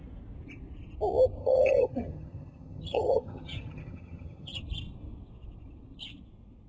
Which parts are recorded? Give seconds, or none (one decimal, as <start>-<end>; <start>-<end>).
0.0-1.4; 4.6-6.7